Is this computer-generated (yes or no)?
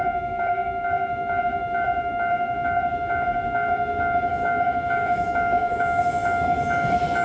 yes